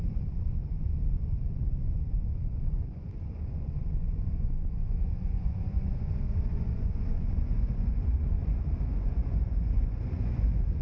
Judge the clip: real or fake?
fake